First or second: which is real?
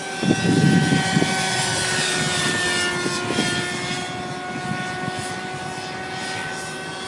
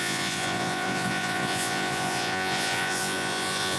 first